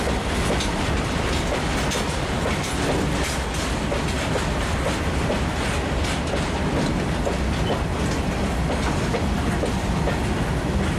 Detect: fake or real real